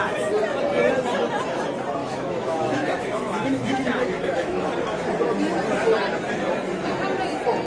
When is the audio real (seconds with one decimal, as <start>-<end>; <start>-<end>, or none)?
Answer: 0.0-2.0; 4.7-7.7